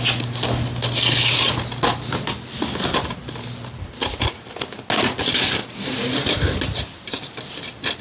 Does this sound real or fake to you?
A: real